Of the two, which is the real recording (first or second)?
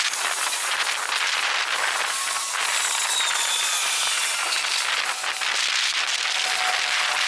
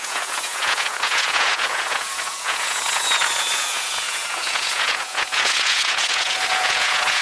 first